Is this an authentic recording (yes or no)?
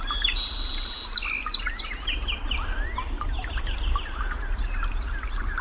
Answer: yes